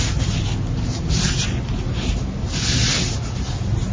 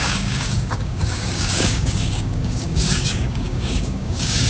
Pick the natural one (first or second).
first